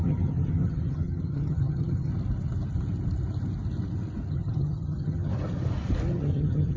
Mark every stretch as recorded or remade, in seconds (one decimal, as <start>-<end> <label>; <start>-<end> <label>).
0.0-2.1 remade; 2.1-4.3 recorded; 4.3-5.3 remade; 5.3-6.1 recorded; 6.1-6.8 remade